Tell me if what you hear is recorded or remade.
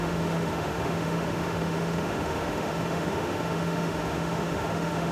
remade